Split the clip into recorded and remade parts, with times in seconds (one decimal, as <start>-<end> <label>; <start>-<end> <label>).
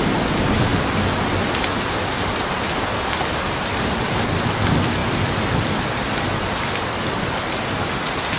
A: 0.0-0.7 recorded; 0.7-4.3 remade; 4.3-5.0 recorded; 5.0-8.4 remade